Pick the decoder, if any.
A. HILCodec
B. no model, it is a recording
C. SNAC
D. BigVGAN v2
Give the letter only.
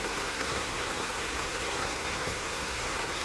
C